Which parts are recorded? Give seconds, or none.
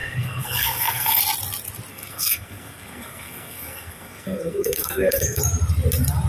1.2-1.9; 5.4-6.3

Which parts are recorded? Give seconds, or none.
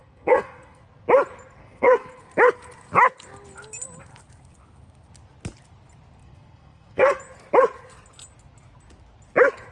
0.8-1.6; 2.2-6.2; 7.2-9.7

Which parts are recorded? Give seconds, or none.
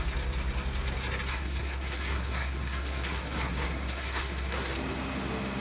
0.0-1.3; 4.7-5.6